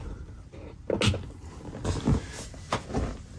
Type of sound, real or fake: real